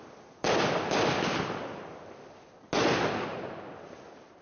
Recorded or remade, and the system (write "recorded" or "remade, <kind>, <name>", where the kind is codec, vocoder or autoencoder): recorded